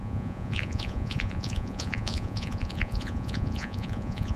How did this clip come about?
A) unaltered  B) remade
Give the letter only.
B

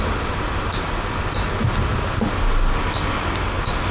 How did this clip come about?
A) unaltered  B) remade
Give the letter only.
A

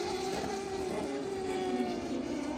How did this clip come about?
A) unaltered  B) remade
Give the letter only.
B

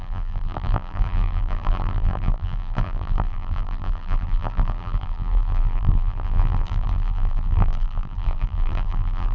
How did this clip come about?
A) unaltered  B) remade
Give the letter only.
B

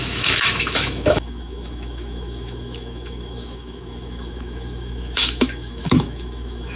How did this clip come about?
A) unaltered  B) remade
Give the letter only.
B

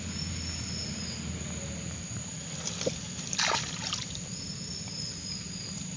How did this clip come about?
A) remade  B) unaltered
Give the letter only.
B